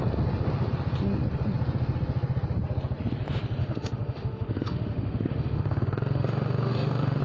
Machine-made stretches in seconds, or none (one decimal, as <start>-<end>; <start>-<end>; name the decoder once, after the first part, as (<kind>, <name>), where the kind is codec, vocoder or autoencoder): 3.6-7.2 (autoencoder, DAC-VAE)

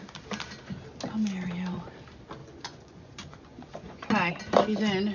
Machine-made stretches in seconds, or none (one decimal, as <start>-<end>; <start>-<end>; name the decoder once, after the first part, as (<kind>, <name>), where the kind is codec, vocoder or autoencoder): 2.4-4.3 (vocoder, Vocos)

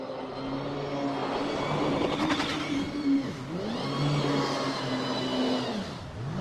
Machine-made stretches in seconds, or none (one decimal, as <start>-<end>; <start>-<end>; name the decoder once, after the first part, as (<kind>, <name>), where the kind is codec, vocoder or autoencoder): none

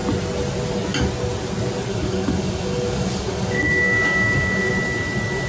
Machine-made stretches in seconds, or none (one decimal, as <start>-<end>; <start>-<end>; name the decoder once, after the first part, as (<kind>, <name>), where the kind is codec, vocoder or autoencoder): 1.9-4.7 (codec, DAC)

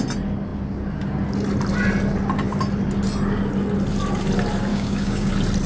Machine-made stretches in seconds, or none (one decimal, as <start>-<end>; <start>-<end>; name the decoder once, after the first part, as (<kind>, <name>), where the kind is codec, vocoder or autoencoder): 4.7-5.3 (codec, DAC)

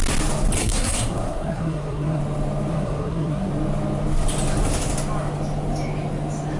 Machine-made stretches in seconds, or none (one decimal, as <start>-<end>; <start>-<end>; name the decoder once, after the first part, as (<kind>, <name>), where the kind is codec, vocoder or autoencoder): 0.6-2.2 (codec, SNAC); 2.7-3.5